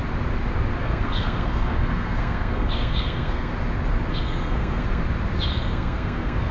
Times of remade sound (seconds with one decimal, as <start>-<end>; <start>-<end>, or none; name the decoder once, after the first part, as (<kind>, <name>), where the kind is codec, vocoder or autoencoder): 0.8-3.5 (codec, SNAC); 4.1-5.0; 5.5-6.5